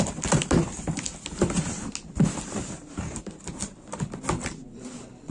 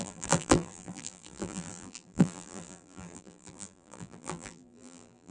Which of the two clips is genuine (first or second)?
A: first